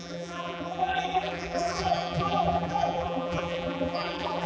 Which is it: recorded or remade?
remade